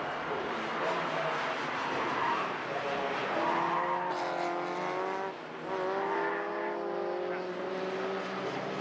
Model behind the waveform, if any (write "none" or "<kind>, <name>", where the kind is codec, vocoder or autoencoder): none